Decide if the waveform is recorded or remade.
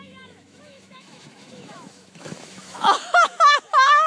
remade